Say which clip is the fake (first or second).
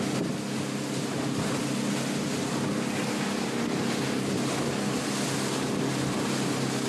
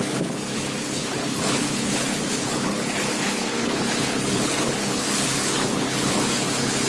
second